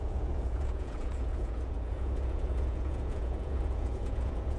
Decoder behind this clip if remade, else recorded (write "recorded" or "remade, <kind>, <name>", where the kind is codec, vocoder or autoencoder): remade, vocoder, Vocos